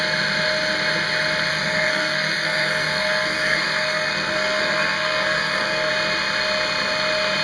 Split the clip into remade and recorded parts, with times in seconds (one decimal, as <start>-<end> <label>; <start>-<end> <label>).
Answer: 0.0-1.5 recorded; 1.5-5.9 remade; 5.9-7.4 recorded